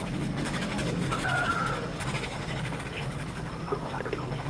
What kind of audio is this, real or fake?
fake